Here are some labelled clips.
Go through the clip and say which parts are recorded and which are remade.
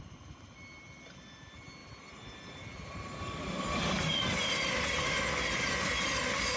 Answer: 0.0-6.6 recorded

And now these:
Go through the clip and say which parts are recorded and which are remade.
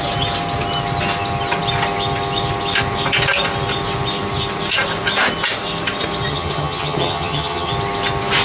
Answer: 0.0-6.3 recorded; 6.3-7.7 remade; 7.7-8.4 recorded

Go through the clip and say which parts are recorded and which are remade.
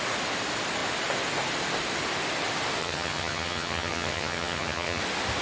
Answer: 0.0-2.8 recorded; 2.8-5.0 remade; 5.0-5.4 recorded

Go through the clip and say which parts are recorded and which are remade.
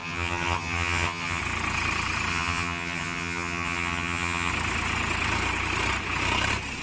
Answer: 0.0-1.4 remade; 1.4-2.3 recorded; 2.3-4.5 remade; 4.5-6.8 recorded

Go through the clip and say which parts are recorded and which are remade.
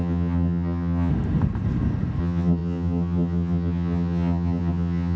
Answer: 0.0-1.1 remade; 1.1-2.2 recorded; 2.2-5.2 remade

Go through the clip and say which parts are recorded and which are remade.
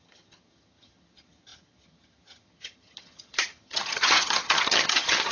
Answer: 0.0-5.3 remade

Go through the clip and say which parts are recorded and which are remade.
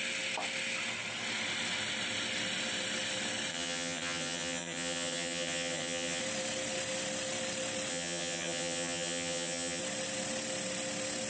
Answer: 0.0-3.5 recorded; 3.5-6.2 remade; 6.2-7.9 recorded; 7.9-9.8 remade; 9.8-11.3 recorded